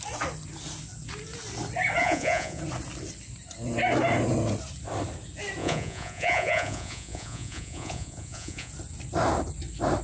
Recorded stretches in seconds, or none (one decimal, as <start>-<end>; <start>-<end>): 0.0-2.0; 2.6-5.6; 8.7-10.0